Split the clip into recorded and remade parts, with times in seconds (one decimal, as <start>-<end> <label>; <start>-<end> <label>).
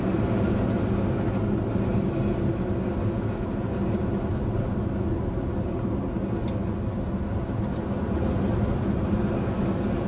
0.0-10.1 recorded